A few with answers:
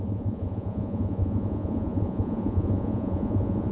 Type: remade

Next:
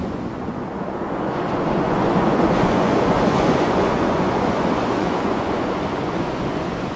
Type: remade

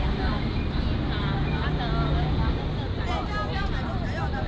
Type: recorded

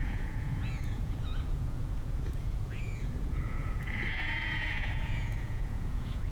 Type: remade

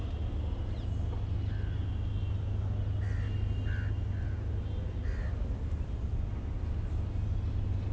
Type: recorded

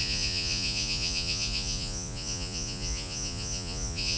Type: remade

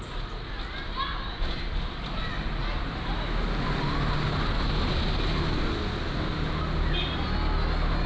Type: recorded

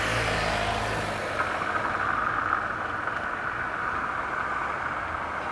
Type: recorded